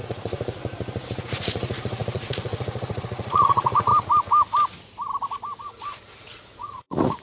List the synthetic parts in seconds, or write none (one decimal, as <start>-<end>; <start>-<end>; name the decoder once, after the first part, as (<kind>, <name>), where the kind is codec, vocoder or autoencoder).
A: 0.0-0.6 (vocoder, Vocos); 1.2-3.9; 5.6-7.2